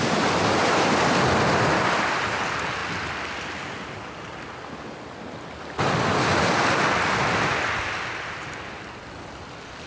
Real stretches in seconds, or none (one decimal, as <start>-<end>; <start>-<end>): 0.0-9.9